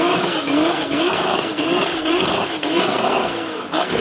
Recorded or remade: remade